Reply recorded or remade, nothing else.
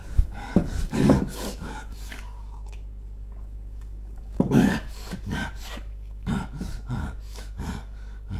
remade